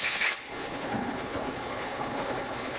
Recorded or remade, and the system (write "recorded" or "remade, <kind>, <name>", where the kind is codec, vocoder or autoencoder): remade, codec, HILCodec